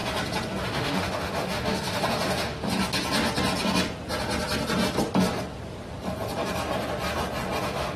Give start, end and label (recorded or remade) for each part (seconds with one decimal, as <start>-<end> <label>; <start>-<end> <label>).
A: 0.0-0.6 recorded; 0.6-2.8 remade; 2.8-7.6 recorded; 7.6-8.0 remade